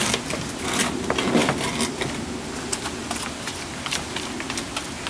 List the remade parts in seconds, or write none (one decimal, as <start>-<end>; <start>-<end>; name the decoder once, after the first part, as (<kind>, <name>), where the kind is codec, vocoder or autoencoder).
3.0-4.1 (vocoder, BigVGAN v2)

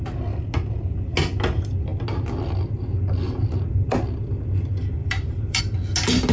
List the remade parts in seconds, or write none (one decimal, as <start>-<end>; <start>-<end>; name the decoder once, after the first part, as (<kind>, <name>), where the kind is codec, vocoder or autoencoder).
5.0-5.6 (vocoder, BigVGAN v2)

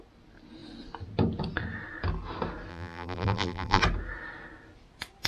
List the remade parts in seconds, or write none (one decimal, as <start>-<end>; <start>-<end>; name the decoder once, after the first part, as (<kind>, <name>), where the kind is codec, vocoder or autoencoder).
2.7-3.8 (vocoder, BigVGAN v2)